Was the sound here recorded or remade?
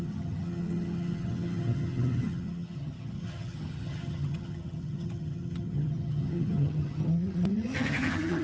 remade